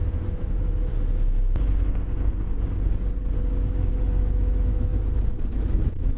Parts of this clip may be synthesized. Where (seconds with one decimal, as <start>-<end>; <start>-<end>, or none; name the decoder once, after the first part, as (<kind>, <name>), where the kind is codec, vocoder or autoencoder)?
0.0-0.9 (autoencoder, DAC-VAE); 3.9-4.9; 5.5-6.2